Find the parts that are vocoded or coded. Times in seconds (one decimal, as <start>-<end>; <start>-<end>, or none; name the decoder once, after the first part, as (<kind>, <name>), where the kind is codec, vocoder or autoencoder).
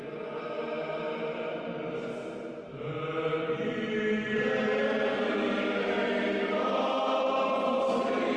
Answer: none